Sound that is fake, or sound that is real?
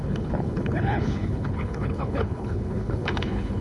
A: fake